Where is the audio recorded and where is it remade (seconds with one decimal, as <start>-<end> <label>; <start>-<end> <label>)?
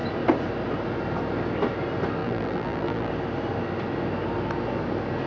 0.0-2.2 recorded; 2.2-3.1 remade; 3.1-5.3 recorded